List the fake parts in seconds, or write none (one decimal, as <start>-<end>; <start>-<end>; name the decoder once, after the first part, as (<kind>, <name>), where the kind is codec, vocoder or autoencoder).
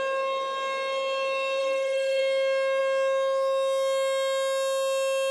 1.6-2.2 (codec, SNAC)